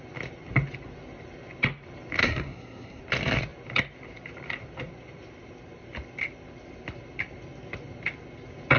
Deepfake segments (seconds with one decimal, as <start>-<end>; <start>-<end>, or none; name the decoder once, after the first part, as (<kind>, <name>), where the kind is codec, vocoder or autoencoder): 2.2-3.0 (codec, SNAC)